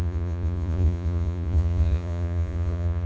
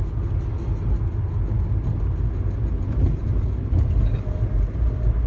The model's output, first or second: first